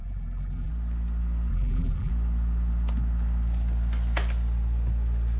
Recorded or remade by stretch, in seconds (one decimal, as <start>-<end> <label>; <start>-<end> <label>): 0.0-0.7 remade; 0.7-1.5 recorded; 1.5-2.1 remade; 2.1-5.4 recorded